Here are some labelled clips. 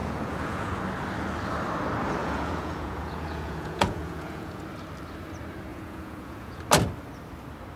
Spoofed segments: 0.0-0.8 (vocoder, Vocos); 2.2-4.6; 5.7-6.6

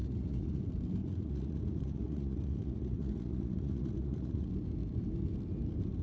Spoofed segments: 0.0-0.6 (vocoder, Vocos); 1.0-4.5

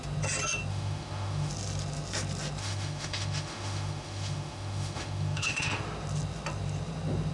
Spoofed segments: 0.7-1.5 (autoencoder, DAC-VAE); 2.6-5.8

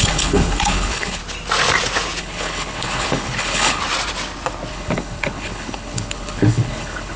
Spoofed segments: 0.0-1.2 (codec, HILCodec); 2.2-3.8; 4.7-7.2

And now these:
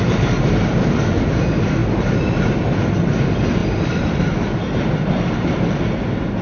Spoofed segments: none

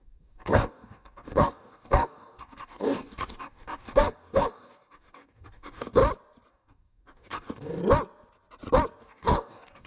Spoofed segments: 0.0-6.0 (codec, DAC); 6.5-7.8; 9.0-9.9

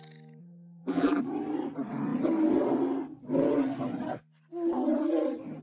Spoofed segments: 0.4-1.2 (vocoder, BigVGAN v2)

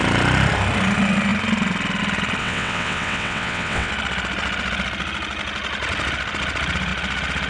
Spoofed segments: 2.4-3.9 (vocoder, WaveNeXt)